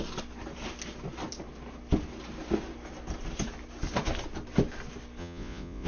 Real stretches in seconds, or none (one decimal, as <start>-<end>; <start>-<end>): 0.0-5.2